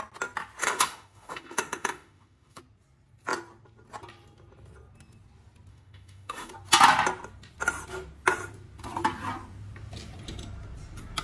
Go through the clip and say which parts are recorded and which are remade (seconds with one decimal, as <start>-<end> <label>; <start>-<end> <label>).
0.0-0.6 recorded; 0.6-2.6 remade; 2.6-5.7 recorded; 5.7-6.5 remade; 6.5-11.2 recorded